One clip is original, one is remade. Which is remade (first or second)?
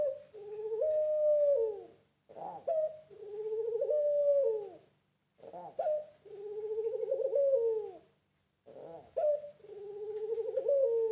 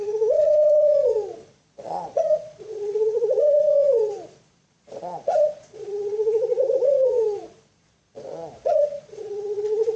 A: second